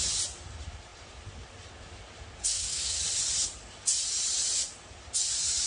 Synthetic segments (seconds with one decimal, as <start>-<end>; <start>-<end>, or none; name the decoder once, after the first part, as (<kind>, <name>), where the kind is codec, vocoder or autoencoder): 2.4-3.0 (codec, SNAC)